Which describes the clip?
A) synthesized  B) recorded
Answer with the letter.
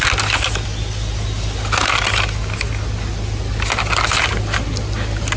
B